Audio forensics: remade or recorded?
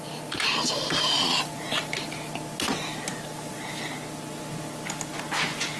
recorded